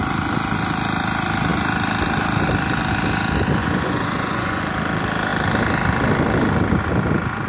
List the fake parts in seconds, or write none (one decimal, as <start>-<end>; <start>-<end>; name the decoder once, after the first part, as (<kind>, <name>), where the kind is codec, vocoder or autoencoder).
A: 3.6-4.6 (vocoder, Vocos)